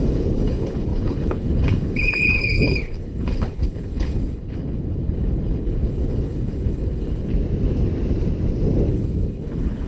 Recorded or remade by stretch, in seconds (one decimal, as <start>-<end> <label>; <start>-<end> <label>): 0.0-7.3 remade; 7.3-8.9 recorded; 8.9-9.9 remade